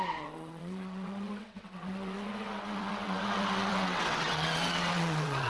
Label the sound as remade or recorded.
remade